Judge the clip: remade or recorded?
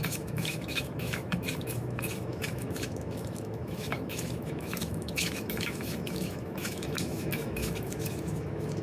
remade